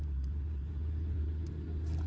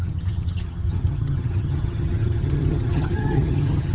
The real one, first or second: first